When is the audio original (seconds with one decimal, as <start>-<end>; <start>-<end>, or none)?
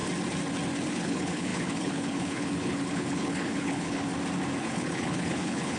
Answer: 0.0-0.9; 4.1-4.6